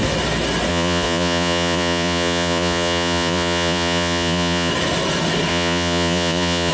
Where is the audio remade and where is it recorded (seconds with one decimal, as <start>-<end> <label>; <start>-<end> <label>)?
0.0-0.7 recorded; 0.7-4.7 remade; 4.7-5.5 recorded; 5.5-6.7 remade